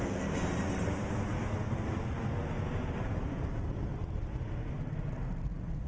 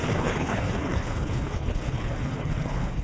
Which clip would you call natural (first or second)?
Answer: first